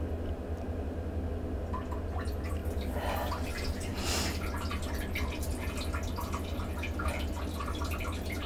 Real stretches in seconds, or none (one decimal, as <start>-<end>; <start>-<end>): 0.0-8.5